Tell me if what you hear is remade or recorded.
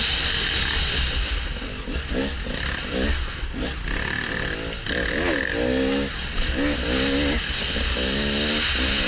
recorded